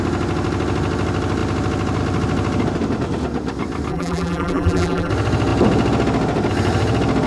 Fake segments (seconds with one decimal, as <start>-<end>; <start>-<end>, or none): 3.9-5.1